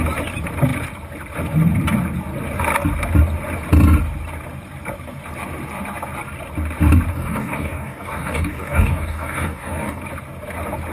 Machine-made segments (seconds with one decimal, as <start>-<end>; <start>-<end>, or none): 7.1-10.0